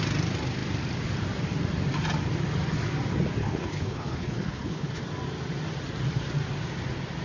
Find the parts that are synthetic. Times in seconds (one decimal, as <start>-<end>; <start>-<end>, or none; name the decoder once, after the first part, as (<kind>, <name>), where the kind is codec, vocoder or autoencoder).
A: 3.4-5.0 (codec, HILCodec)